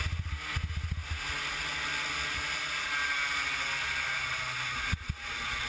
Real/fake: real